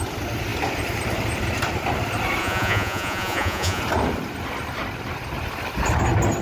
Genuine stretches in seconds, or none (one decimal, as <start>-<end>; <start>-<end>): 0.0-2.4; 3.8-6.4